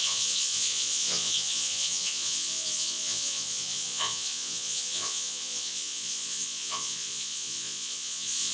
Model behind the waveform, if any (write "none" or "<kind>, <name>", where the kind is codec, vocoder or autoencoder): vocoder, Vocos